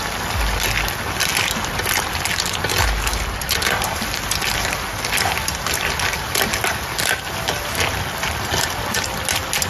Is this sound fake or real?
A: real